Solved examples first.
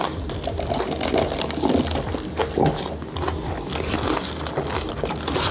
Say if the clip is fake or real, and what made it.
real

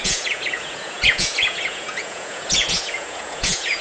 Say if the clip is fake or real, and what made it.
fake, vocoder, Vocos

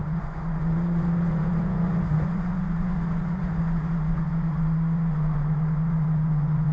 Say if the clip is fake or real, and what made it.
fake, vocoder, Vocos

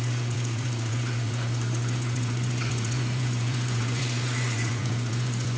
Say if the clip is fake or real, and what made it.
fake, vocoder, Vocos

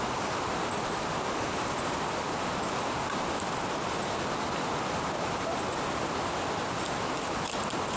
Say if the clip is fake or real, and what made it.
real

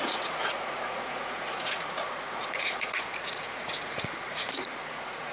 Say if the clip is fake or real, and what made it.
fake, vocoder, Vocos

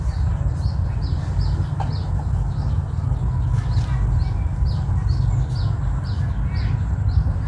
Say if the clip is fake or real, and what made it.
real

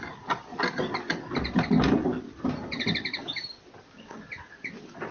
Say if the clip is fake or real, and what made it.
real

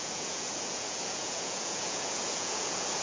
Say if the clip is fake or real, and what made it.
fake, vocoder, Vocos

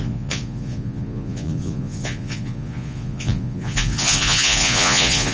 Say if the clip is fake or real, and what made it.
fake, vocoder, Vocos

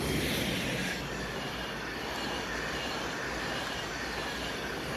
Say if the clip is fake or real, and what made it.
real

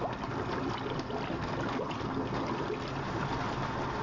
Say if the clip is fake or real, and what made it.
real